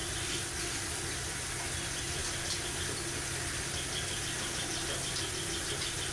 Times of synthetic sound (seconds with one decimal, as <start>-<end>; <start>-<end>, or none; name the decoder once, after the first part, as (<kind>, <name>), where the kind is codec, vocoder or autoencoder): none